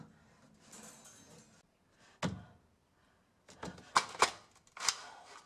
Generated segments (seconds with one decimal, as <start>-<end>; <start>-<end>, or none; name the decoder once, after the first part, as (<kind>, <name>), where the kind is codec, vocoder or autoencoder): none